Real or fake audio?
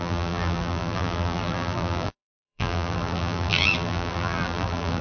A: fake